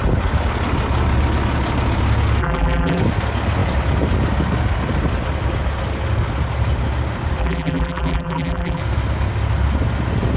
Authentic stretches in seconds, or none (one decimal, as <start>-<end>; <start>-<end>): 0.0-2.4; 3.0-7.4; 8.8-10.4